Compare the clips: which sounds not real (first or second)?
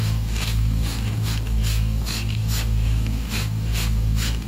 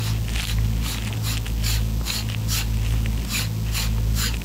first